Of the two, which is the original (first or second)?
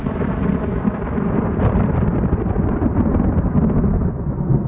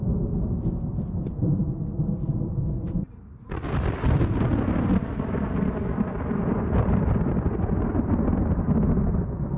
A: second